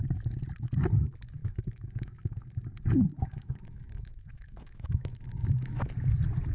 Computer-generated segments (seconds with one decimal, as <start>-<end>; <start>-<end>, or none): 1.4-2.6; 3.1-5.9